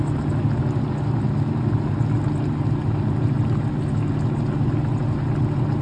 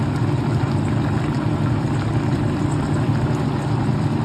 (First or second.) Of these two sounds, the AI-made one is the second